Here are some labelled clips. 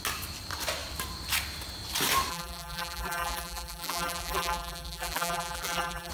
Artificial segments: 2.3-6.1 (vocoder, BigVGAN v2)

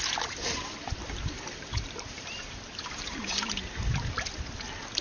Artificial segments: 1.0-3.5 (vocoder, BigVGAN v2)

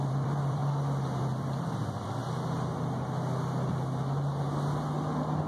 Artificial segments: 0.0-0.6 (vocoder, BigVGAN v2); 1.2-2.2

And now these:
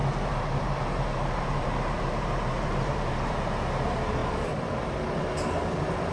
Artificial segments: 0.0-3.5 (vocoder, BigVGAN v2)

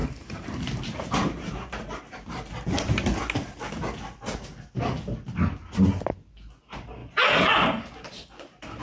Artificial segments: 0.0-0.6 (vocoder, BigVGAN v2); 7.0-8.8

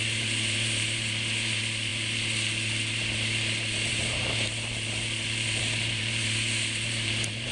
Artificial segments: 0.0-7.5 (vocoder, BigVGAN v2)

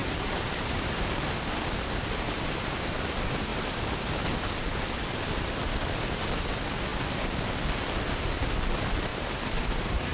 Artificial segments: 0.0-1.3 (vocoder, BigVGAN v2); 3.5-4.1; 9.1-10.1